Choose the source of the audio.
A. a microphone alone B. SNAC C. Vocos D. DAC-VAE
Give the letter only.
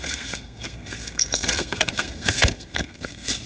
B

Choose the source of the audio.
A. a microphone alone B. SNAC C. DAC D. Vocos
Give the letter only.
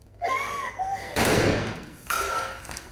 B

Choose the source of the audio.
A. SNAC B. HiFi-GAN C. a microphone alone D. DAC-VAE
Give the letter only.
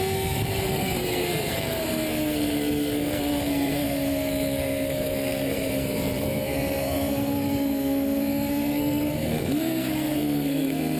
A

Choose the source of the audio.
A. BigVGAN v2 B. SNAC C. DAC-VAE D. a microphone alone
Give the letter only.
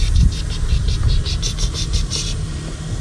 D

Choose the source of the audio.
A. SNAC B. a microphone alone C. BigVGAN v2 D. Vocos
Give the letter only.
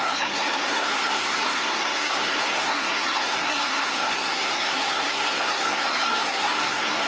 A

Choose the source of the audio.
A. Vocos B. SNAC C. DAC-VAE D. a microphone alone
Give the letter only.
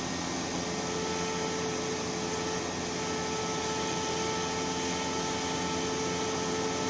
D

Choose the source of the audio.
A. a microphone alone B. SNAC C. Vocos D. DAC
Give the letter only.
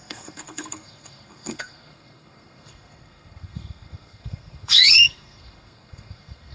B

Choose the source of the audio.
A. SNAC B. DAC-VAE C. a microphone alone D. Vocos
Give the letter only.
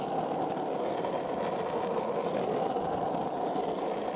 C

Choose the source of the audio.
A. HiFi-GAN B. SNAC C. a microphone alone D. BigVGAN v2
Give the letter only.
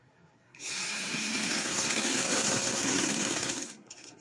B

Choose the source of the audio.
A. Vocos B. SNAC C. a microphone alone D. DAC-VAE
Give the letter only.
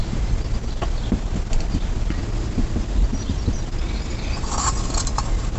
C